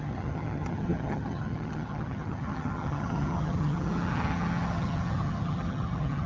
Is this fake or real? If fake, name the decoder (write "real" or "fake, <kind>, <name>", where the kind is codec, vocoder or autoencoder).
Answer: fake, vocoder, HiFi-GAN